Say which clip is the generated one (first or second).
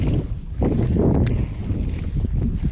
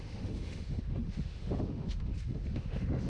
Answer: second